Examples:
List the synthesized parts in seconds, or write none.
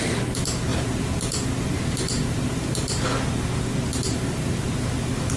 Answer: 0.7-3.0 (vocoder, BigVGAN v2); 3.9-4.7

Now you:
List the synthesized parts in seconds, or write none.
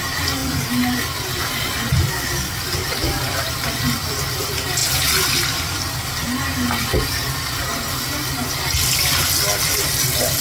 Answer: 0.0-0.4 (vocoder, BigVGAN v2); 1.4-6.2; 7.7-10.4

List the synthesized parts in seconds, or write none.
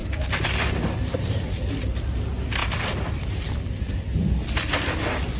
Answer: 0.0-1.5 (vocoder, BigVGAN v2); 2.6-3.8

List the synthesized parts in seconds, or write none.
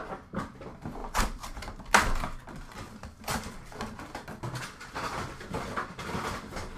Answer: 1.0-1.9 (vocoder, BigVGAN v2)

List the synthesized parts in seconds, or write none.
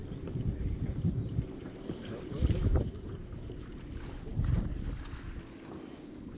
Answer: 0.0-3.8 (vocoder, BigVGAN v2)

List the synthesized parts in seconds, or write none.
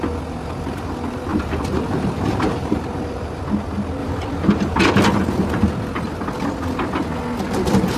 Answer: 1.3-3.4 (vocoder, BigVGAN v2); 4.0-4.8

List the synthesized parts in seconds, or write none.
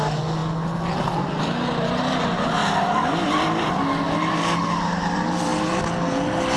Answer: 2.6-3.8 (vocoder, BigVGAN v2)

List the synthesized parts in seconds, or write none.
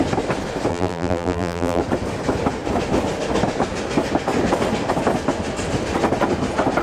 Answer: 0.7-1.8 (vocoder, BigVGAN v2)